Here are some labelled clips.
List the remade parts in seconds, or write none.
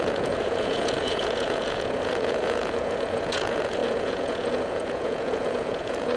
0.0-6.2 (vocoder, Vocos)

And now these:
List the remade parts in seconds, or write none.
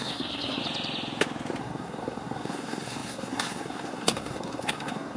0.0-0.6 (codec, SNAC); 1.6-5.2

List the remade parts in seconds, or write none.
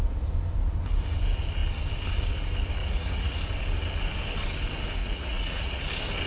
2.8-3.4 (vocoder, Vocos); 5.0-5.8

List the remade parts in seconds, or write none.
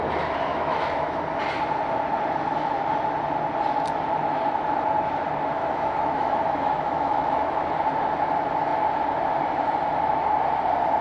0.5-1.2 (autoencoder, DAC-VAE); 5.6-7.7